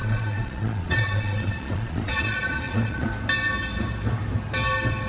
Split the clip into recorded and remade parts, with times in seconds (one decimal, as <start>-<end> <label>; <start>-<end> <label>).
0.0-3.1 remade; 3.1-5.1 recorded